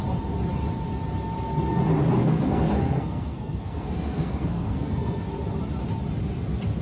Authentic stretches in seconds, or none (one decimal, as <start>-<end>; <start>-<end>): 0.0-2.2; 5.3-6.8